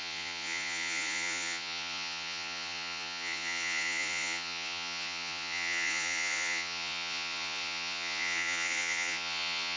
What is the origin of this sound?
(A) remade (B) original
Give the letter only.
A